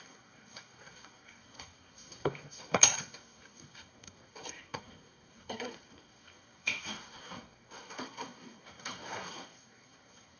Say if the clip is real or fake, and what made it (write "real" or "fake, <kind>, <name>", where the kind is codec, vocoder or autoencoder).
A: fake, codec, SNAC